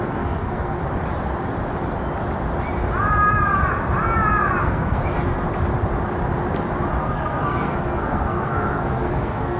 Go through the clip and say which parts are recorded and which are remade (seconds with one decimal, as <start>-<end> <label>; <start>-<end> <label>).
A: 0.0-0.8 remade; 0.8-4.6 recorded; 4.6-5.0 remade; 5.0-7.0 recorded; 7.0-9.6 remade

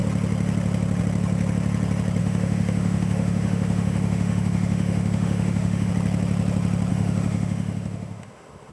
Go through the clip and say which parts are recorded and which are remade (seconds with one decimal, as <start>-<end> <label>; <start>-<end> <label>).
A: 0.0-2.2 recorded; 2.2-5.9 remade; 5.9-6.9 recorded; 6.9-8.7 remade

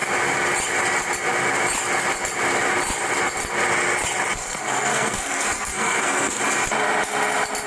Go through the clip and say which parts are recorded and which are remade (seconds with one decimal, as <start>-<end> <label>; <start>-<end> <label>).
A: 0.0-4.4 recorded; 4.4-6.4 remade; 6.4-7.7 recorded